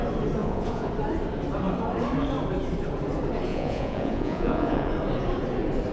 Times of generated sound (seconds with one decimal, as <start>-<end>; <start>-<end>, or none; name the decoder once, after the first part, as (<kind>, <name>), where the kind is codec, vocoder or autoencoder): 0.4-0.9 (vocoder, Vocos); 3.5-4.9